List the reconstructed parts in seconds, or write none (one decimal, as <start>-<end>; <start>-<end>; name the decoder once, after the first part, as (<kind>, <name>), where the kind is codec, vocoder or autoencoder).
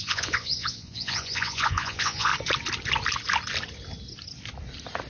0.0-2.3 (vocoder, Vocos)